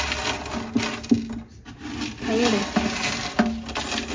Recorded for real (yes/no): yes